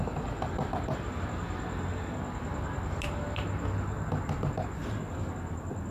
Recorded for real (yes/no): yes